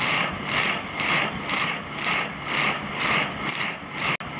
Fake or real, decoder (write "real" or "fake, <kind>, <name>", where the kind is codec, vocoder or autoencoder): real